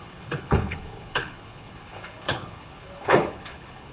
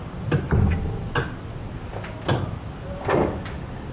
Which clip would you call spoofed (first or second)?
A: first